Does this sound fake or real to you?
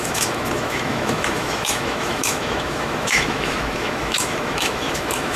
fake